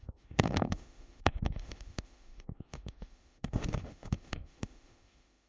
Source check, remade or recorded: remade